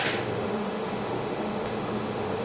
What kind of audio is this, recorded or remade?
remade